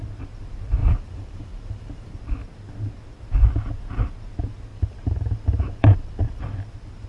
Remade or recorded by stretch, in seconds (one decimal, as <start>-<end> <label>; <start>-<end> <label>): 0.0-0.8 recorded; 0.8-2.1 remade; 2.1-4.7 recorded; 4.7-6.4 remade; 6.4-7.1 recorded